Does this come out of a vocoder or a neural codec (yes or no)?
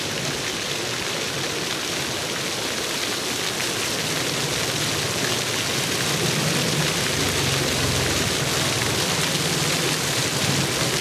no